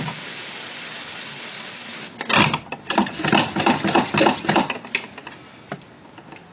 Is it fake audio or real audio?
real